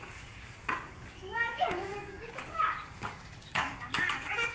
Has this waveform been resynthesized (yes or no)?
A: yes